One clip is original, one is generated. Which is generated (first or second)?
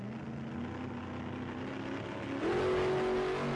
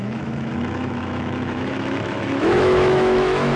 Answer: second